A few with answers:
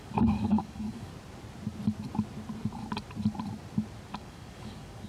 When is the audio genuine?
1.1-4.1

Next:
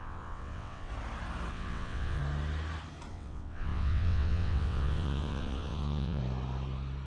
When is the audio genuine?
0.9-1.5; 2.2-3.1; 6.2-7.1

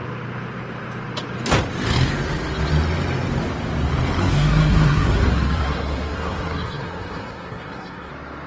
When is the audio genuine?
0.0-4.2; 8.1-8.5

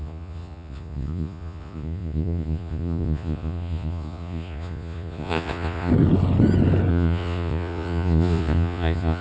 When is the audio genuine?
5.9-6.9